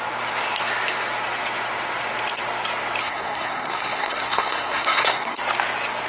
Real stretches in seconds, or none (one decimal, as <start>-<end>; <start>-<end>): 0.0-3.0; 5.4-6.1

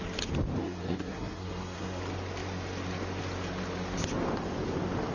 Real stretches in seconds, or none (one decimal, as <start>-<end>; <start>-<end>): 0.0-0.6; 2.0-5.1

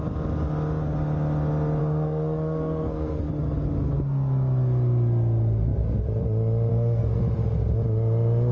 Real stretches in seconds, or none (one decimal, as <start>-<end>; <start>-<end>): 0.0-1.8; 3.3-6.7; 7.2-8.5

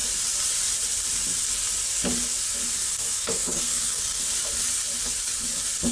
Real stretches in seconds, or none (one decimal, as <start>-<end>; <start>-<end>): 0.0-2.9; 4.3-5.9